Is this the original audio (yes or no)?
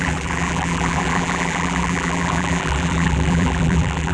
no